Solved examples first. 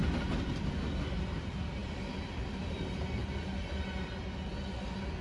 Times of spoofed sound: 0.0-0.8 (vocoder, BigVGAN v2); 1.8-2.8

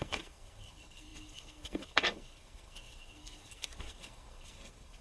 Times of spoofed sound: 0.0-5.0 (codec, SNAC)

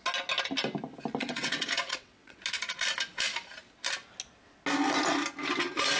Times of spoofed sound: 1.2-2.4 (vocoder, WaveNeXt)

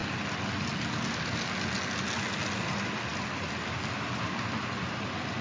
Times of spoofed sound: none

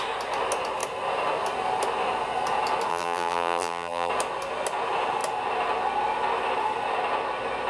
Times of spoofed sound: 2.9-4.1 (vocoder, BigVGAN v2)